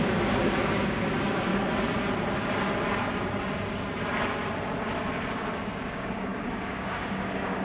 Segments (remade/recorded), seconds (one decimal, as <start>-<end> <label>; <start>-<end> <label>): 0.0-1.5 remade; 1.5-5.6 recorded; 5.6-7.6 remade